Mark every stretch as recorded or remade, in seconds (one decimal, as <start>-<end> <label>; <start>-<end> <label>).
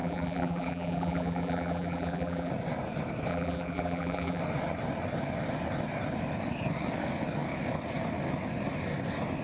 0.0-2.5 remade; 2.5-3.3 recorded; 3.3-4.4 remade; 4.4-9.4 recorded